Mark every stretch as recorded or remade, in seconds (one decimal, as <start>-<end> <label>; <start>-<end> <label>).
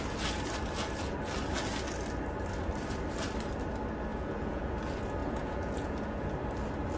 0.0-4.1 recorded; 4.1-4.7 remade; 4.7-5.2 recorded; 5.2-6.3 remade; 6.3-7.0 recorded